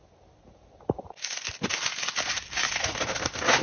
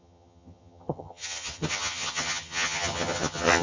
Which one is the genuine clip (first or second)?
first